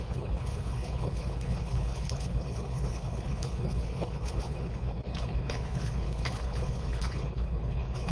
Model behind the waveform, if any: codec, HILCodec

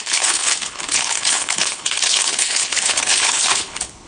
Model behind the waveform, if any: codec, HILCodec